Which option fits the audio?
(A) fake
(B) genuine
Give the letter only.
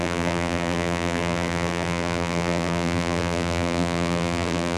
A